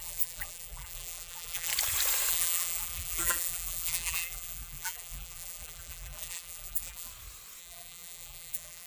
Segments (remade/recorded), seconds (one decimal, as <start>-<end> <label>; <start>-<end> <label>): 0.0-1.7 remade; 1.7-2.3 recorded; 2.3-7.1 remade; 7.1-7.6 recorded; 7.6-8.9 remade